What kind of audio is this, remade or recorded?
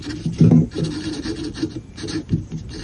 recorded